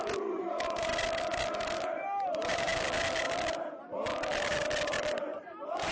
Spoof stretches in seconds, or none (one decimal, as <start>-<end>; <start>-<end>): 0.0-0.9; 1.9-2.7; 5.3-5.9